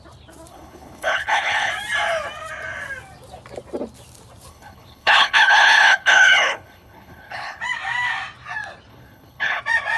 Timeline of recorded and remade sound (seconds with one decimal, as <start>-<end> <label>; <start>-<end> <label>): 0.0-0.5 recorded; 0.5-1.7 remade; 1.7-4.5 recorded; 4.5-7.6 remade; 7.6-8.9 recorded; 8.9-9.6 remade; 9.6-10.0 recorded